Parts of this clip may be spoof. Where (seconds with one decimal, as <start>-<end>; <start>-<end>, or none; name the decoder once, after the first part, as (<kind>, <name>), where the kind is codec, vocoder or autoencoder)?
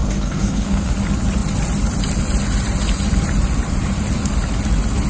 0.0-0.9 (codec, SNAC)